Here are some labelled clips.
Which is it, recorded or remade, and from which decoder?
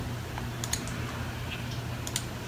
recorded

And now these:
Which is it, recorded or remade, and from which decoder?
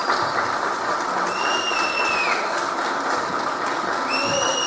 recorded